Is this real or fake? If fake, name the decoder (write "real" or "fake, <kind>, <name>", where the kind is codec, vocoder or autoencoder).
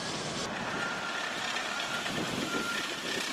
fake, vocoder, BigVGAN v2